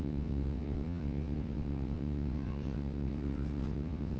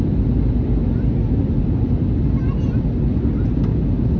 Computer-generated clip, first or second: first